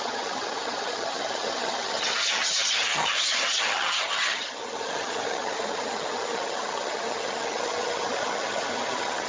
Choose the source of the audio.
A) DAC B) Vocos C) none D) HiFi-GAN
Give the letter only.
D